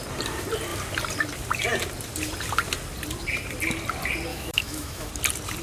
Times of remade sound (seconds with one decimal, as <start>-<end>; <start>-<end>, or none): 4.3-5.1